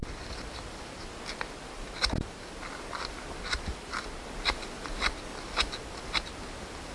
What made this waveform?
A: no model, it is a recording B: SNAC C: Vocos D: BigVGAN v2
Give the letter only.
A